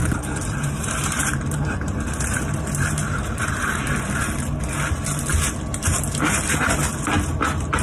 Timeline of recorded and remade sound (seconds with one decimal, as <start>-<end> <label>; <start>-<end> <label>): 0.0-3.8 remade; 3.8-7.8 recorded